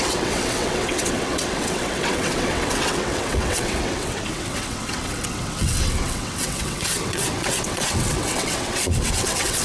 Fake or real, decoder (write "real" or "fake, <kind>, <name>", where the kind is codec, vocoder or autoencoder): fake, vocoder, WaveNeXt